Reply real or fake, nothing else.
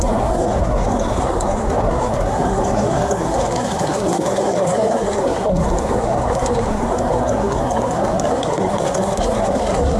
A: fake